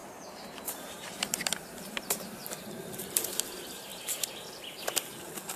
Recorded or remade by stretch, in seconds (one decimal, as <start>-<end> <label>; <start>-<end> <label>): 0.0-3.4 remade; 3.4-5.6 recorded